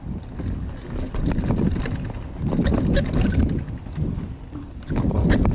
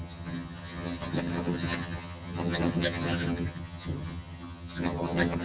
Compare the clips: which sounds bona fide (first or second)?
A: first